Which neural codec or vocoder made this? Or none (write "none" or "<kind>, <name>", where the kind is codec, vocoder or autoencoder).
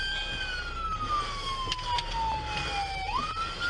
none